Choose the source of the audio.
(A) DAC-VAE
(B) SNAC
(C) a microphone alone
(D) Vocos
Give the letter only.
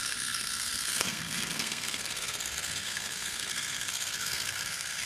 B